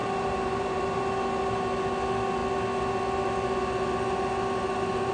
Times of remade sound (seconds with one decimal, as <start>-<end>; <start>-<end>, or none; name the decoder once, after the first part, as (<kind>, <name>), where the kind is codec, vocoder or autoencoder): 0.0-1.0 (vocoder, BigVGAN v2)